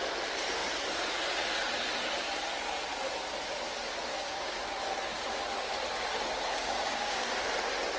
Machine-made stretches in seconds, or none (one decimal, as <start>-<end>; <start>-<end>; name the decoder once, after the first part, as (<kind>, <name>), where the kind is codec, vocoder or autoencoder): 4.1-4.7 (codec, DAC); 6.6-7.3